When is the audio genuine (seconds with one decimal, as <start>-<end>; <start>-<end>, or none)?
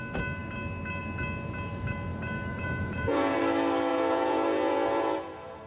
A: 0.0-2.5; 3.4-3.9